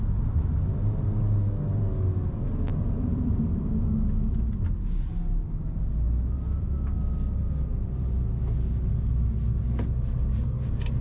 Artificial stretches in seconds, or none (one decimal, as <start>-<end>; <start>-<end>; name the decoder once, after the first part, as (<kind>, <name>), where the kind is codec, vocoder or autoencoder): 2.7-3.7 (vocoder, BigVGAN v2)